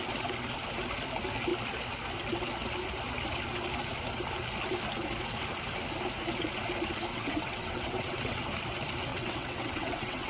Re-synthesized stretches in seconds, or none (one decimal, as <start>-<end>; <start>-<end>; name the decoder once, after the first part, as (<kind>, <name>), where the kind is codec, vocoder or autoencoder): 7.1-8.4 (vocoder, WaveNeXt); 9.1-10.3